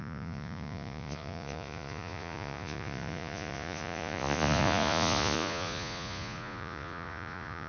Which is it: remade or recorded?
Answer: remade